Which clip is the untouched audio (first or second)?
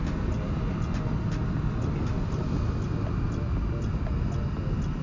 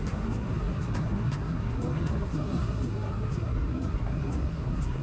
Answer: first